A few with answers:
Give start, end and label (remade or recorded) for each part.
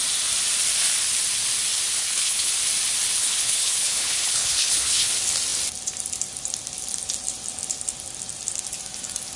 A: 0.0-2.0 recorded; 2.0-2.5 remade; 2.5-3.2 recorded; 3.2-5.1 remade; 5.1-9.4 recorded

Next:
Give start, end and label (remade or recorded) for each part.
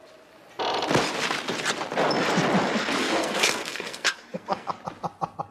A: 0.0-3.0 recorded; 3.0-4.7 remade; 4.7-5.5 recorded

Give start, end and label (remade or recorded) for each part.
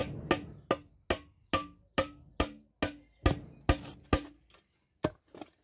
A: 0.0-5.6 recorded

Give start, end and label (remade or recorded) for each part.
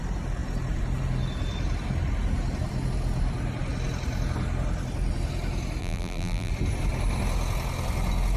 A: 0.0-5.8 recorded; 5.8-6.5 remade; 6.5-8.4 recorded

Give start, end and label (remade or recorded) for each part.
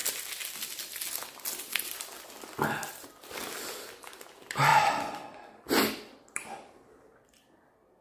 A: 0.0-0.8 remade; 0.8-8.0 recorded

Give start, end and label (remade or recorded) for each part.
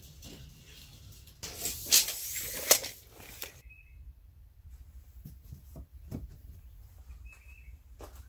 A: 0.0-2.8 recorded; 2.8-4.7 remade; 4.7-5.9 recorded; 5.9-7.1 remade; 7.1-8.3 recorded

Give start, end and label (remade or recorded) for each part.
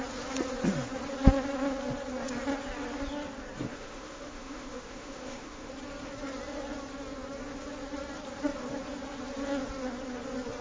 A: 0.0-3.7 recorded; 3.7-5.7 remade; 5.7-10.6 recorded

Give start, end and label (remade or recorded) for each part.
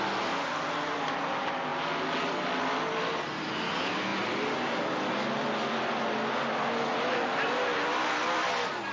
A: 0.0-8.9 recorded